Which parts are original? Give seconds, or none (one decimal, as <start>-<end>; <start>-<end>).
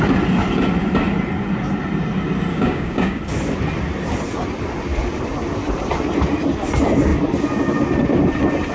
0.0-2.5; 3.2-8.7